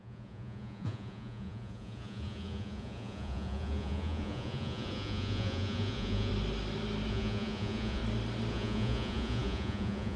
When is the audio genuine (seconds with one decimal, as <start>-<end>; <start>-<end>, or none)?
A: 6.3-7.1; 8.0-8.5